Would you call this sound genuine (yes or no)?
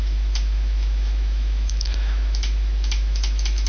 no